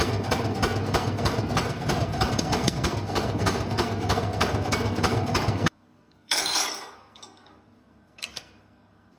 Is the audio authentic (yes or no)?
no